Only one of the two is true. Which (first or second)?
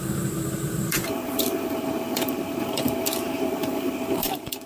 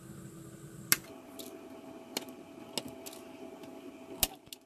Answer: second